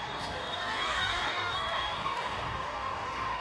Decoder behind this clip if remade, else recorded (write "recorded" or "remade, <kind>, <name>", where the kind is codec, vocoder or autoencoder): remade, codec, DAC